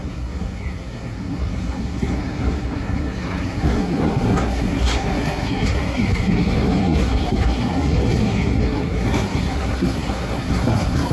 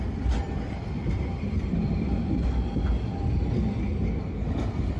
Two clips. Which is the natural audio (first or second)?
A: second